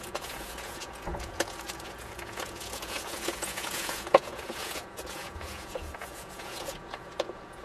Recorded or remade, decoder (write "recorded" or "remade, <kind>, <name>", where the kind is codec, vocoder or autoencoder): remade, vocoder, Vocos